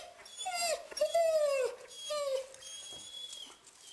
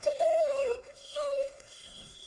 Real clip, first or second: first